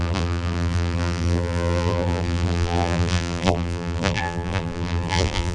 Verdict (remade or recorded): remade